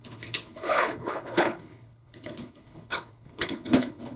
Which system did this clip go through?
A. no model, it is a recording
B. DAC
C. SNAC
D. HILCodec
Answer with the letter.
D